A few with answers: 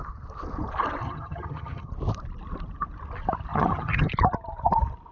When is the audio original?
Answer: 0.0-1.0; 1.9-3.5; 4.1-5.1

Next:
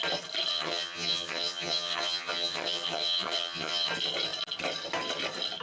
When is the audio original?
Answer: 0.0-0.5; 3.9-5.6

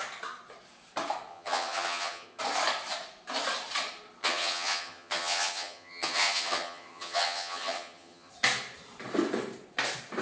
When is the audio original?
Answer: 0.0-1.3; 2.4-4.2; 8.3-10.2

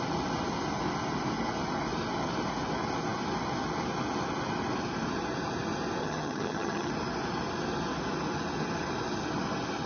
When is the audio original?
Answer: 0.0-6.0; 6.9-9.9